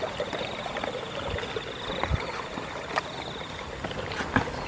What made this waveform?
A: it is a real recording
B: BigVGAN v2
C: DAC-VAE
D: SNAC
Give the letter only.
A